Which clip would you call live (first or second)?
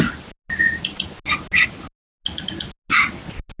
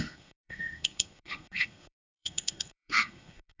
first